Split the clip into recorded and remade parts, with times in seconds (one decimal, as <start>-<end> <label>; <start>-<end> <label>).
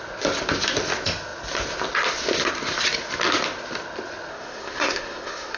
0.0-4.3 recorded; 4.3-5.6 remade